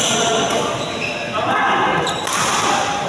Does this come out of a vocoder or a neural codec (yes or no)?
no